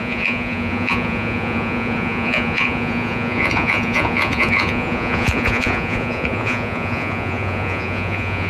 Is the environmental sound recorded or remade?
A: remade